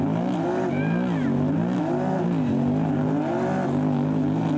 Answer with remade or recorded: recorded